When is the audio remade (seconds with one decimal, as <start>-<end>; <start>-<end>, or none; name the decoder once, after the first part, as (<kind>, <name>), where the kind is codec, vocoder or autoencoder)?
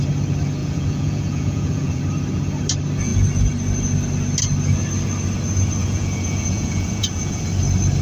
0.6-2.0 (vocoder, Vocos); 5.8-7.4